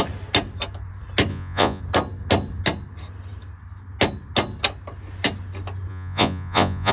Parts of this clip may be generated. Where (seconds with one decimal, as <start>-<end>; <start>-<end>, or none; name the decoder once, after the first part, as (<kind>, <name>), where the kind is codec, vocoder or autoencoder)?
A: 1.3-1.8 (vocoder, Vocos); 5.9-6.9